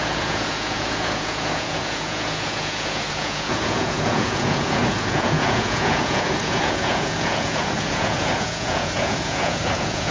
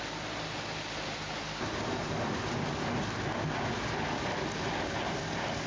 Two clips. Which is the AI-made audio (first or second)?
first